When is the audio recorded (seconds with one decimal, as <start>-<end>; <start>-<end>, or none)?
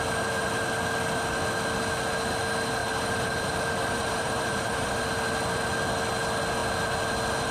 0.0-2.8; 5.0-7.5